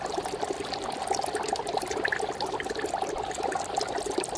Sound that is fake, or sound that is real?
real